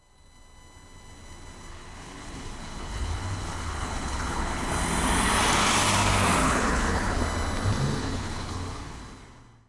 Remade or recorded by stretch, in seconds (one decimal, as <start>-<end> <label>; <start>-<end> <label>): 0.0-1.7 recorded; 1.7-4.7 remade; 4.7-6.4 recorded; 6.4-7.2 remade; 7.2-8.0 recorded; 8.0-9.0 remade; 9.0-9.7 recorded